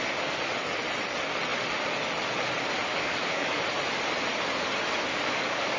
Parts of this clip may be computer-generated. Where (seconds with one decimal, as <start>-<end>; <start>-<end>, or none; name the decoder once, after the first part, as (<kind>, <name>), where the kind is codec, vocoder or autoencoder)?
2.9-3.6 (codec, DAC); 5.1-5.8